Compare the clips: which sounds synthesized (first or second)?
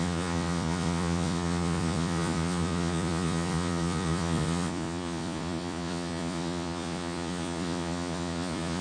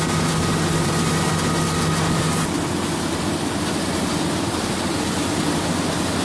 first